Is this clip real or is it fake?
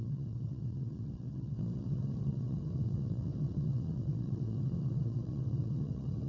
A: fake